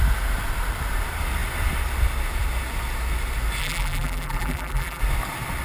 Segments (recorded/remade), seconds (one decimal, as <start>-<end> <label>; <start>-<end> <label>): 0.0-3.6 recorded; 3.6-5.0 remade; 5.0-5.6 recorded